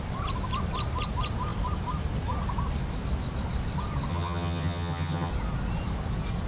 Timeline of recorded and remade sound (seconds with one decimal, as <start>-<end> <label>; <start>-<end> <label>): 0.0-4.1 recorded; 4.1-5.3 remade; 5.3-6.5 recorded